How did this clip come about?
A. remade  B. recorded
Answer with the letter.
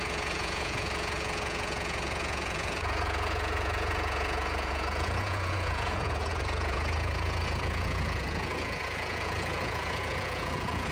A